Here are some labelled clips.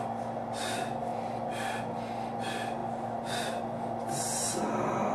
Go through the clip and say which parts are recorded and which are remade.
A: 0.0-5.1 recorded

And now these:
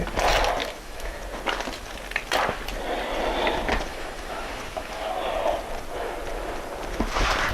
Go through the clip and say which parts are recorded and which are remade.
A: 0.0-0.6 recorded; 0.6-1.2 remade; 1.2-3.9 recorded; 3.9-5.1 remade; 5.1-7.5 recorded